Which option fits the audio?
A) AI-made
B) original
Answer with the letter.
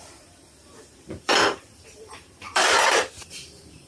A